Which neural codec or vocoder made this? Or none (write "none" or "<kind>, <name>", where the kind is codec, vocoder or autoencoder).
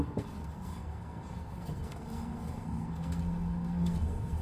codec, SNAC